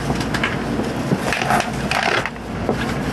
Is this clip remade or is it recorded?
recorded